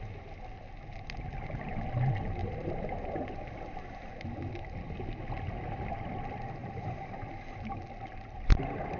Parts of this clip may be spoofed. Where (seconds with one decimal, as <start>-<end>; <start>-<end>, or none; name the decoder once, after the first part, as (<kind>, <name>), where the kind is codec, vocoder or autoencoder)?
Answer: 2.4-3.3 (vocoder, BigVGAN v2); 6.6-7.3